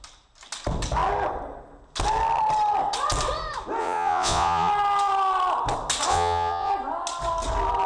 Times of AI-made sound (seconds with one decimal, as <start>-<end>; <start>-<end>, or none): 3.8-4.7; 6.1-6.7